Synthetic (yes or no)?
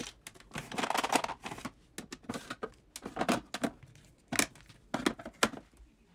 no